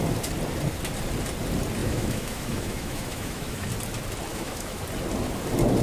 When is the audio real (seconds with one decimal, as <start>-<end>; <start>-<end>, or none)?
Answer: 0.0-1.8; 3.7-4.3; 4.8-5.8